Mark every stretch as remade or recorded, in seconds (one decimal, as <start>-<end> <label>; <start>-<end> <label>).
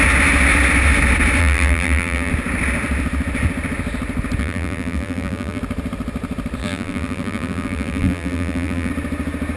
0.0-1.4 recorded; 1.4-2.3 remade; 2.3-4.4 recorded; 4.4-5.6 remade; 5.6-6.6 recorded; 6.6-8.9 remade; 8.9-9.6 recorded